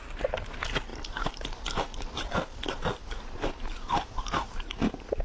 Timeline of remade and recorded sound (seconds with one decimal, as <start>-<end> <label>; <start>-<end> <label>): 0.0-0.9 recorded; 0.9-3.5 remade; 3.5-5.2 recorded